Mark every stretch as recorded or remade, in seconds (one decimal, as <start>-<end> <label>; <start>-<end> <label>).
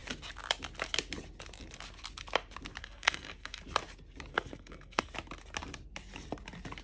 0.0-2.8 recorded; 2.8-3.6 remade; 3.6-4.3 recorded; 4.3-5.1 remade; 5.1-6.8 recorded